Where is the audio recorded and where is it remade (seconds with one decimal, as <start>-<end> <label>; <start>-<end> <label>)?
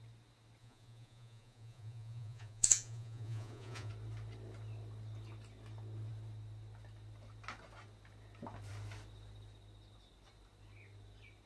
0.0-0.6 recorded; 0.6-3.9 remade; 3.9-11.5 recorded